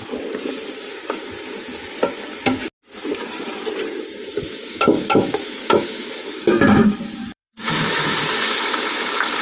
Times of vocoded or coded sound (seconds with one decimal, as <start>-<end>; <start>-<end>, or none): 4.2-8.2